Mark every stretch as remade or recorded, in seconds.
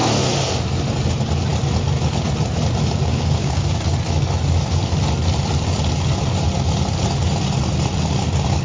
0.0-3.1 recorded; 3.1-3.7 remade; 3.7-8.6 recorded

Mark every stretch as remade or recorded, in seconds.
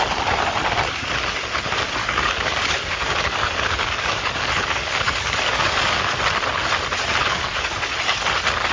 0.0-2.0 recorded; 2.0-6.2 remade; 6.2-7.2 recorded; 7.2-7.9 remade; 7.9-8.7 recorded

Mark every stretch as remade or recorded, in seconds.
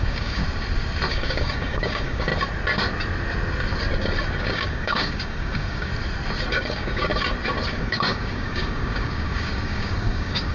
0.0-0.4 remade; 0.4-1.1 recorded; 1.1-2.3 remade; 2.3-4.4 recorded; 4.4-5.9 remade; 5.9-6.5 recorded; 6.5-7.1 remade; 7.1-7.7 recorded; 7.7-10.5 remade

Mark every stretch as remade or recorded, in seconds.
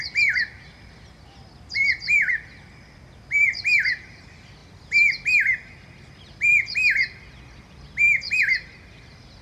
0.0-9.4 recorded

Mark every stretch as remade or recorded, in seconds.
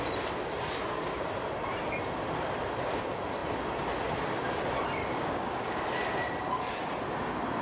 0.0-5.0 recorded; 5.0-5.8 remade; 5.8-7.6 recorded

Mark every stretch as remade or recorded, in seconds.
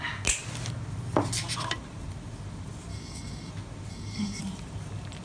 0.0-2.9 recorded; 2.9-3.5 remade; 3.5-3.9 recorded; 3.9-4.4 remade; 4.4-5.2 recorded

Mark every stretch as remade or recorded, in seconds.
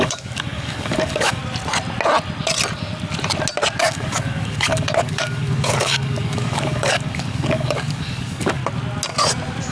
0.0-1.4 remade; 1.4-3.8 recorded; 3.8-8.6 remade; 8.6-9.7 recorded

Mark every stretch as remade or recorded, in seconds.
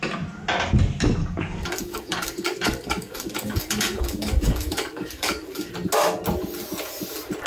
0.0-1.2 recorded; 1.2-5.7 remade; 5.7-7.5 recorded